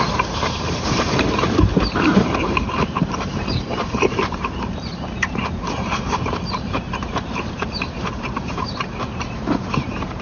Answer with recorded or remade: remade